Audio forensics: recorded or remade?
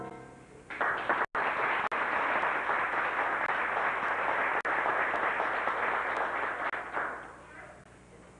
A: recorded